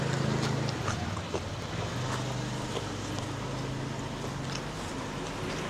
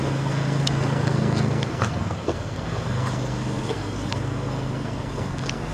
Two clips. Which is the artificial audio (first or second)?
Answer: second